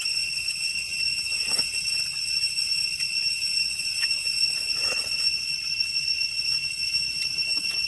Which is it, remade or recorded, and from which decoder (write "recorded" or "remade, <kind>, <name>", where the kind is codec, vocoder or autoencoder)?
remade, vocoder, Vocos